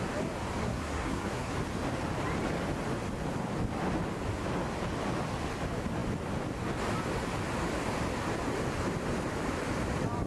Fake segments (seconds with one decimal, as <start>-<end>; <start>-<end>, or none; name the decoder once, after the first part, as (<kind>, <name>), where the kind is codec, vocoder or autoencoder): 0.6-1.5 (codec, SNAC)